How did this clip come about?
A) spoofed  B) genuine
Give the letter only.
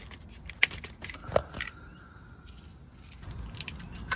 B